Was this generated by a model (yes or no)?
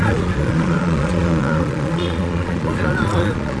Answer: yes